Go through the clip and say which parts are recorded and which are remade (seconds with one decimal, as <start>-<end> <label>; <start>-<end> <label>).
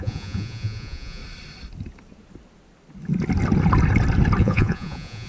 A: 0.0-1.2 remade; 1.2-4.4 recorded; 4.4-5.3 remade